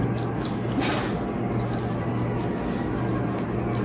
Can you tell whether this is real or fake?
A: real